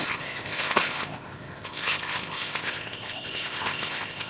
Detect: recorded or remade remade